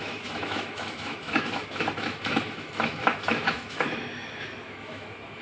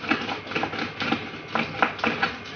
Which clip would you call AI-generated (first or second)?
first